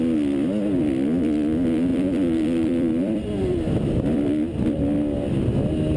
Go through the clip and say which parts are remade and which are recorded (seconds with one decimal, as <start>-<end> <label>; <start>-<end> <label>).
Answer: 0.0-1.9 recorded; 1.9-3.9 remade; 3.9-6.0 recorded